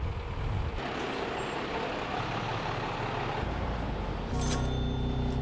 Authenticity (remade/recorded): recorded